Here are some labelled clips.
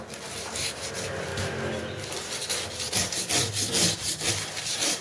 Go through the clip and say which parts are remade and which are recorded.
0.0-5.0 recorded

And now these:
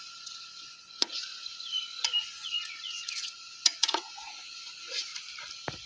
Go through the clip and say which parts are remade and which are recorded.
0.0-5.1 remade; 5.1-5.9 recorded

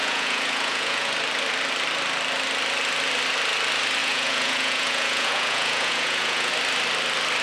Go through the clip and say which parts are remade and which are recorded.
0.0-1.1 remade; 1.1-4.0 recorded; 4.0-6.5 remade; 6.5-7.4 recorded

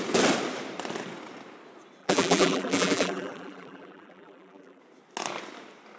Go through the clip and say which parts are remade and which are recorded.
0.0-2.0 recorded; 2.0-4.8 remade; 4.8-6.0 recorded